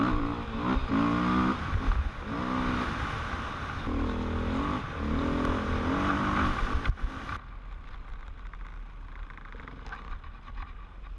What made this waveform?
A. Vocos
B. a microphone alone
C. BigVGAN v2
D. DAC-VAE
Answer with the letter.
B